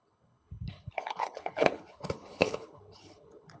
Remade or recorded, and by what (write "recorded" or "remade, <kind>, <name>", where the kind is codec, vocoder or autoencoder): remade, codec, HILCodec